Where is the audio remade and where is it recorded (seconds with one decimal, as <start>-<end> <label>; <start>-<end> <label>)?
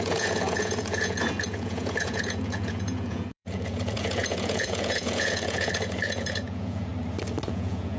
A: 0.0-6.9 remade; 6.9-7.5 recorded; 7.5-8.0 remade